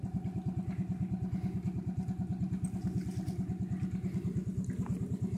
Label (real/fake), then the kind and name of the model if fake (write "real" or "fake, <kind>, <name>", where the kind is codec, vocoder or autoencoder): real